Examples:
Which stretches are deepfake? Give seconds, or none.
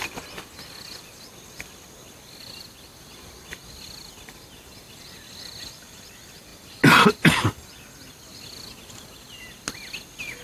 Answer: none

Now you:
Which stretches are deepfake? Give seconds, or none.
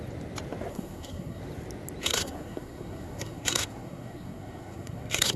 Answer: 0.7-1.4; 2.0-5.4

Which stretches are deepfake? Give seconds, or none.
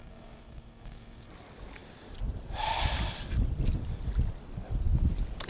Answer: 0.0-1.3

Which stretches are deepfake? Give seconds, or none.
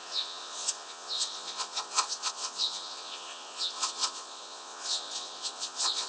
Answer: 0.0-6.1